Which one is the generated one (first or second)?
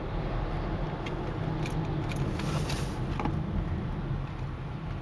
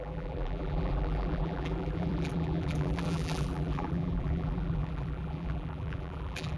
second